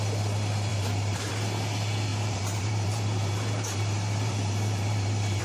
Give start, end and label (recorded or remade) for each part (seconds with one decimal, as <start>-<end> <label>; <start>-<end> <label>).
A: 0.0-0.7 recorded; 0.7-1.3 remade; 1.3-2.1 recorded; 2.1-5.4 remade